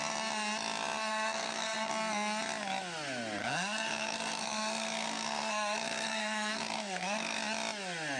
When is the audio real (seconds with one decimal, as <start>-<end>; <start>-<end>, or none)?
0.0-1.1; 1.9-3.4; 7.4-8.2